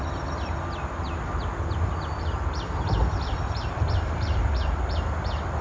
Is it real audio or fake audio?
fake